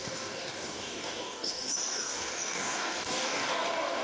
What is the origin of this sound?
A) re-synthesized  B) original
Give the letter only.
A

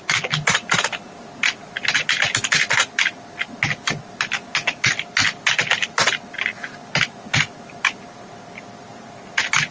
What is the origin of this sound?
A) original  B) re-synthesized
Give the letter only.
A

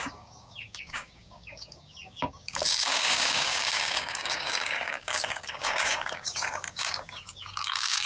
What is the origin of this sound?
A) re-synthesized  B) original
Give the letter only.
A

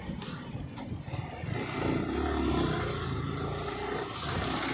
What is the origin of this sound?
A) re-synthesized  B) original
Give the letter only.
B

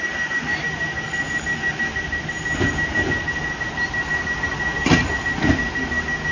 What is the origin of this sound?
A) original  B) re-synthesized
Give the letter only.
A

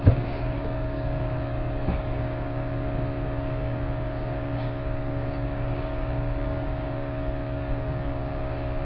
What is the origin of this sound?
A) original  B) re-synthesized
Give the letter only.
B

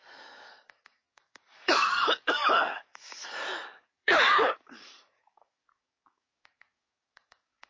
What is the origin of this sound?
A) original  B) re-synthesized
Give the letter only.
B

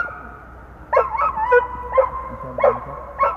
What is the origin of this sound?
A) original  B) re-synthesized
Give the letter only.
A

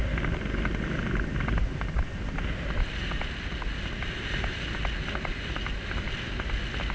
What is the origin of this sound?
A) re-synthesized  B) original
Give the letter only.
B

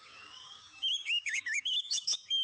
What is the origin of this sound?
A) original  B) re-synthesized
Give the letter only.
B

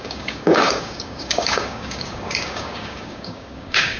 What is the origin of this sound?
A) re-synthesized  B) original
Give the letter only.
A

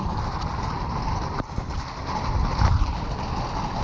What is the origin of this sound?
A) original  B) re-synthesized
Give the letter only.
A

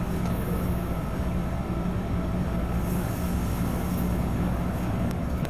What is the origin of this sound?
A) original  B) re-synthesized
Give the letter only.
B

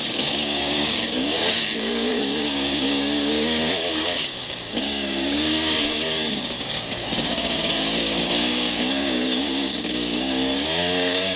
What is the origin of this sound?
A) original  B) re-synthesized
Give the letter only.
B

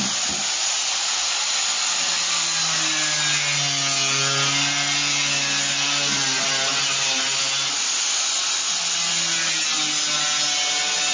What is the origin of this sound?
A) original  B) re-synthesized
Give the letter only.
A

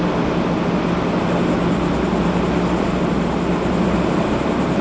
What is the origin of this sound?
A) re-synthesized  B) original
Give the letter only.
B